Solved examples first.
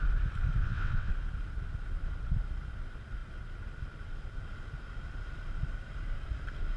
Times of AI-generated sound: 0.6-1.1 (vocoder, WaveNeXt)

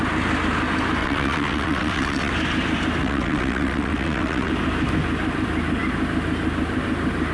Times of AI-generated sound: 1.0-2.3 (vocoder, WaveNeXt); 3.0-4.5

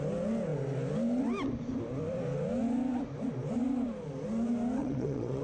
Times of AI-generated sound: 4.8-5.4 (vocoder, WaveNeXt)

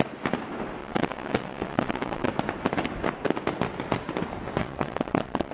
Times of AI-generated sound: 0.8-2.3 (vocoder, WaveNeXt); 4.6-5.5

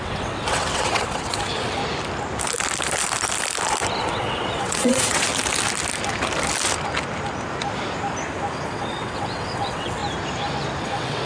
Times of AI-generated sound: 0.0-1.8 (vocoder, WaveNeXt); 4.0-5.3; 8.7-10.0; 10.8-11.3

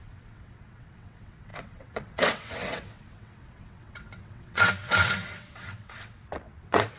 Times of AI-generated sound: 0.0-7.0 (vocoder, WaveNeXt)